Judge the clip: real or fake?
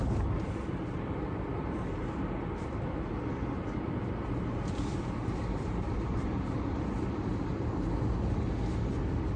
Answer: real